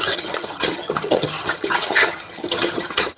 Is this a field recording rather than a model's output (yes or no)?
no